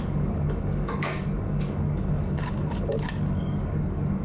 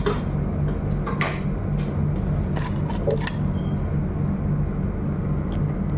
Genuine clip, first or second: second